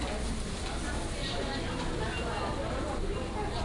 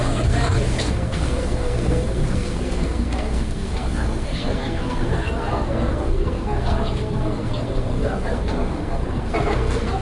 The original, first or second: first